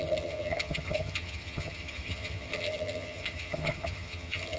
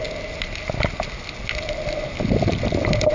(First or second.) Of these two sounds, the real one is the second